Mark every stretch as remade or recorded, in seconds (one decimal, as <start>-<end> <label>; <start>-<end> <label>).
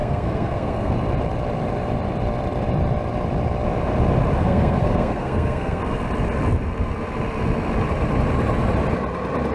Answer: 0.0-0.9 remade; 0.9-4.4 recorded; 4.4-5.8 remade; 5.8-9.5 recorded